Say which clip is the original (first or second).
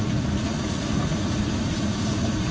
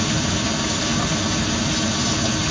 second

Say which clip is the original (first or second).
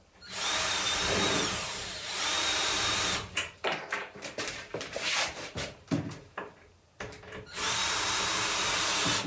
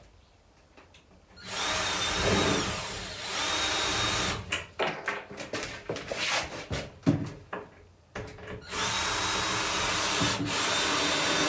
second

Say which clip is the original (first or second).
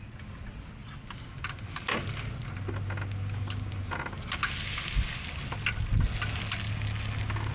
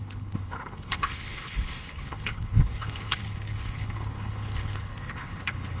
first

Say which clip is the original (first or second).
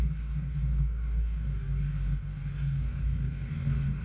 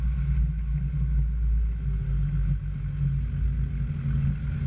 second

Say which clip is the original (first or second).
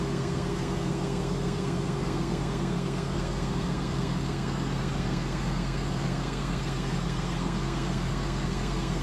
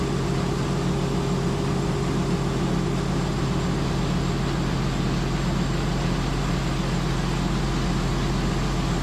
second